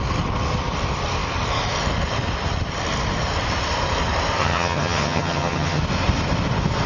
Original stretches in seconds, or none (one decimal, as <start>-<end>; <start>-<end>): 0.0-4.4; 5.8-6.9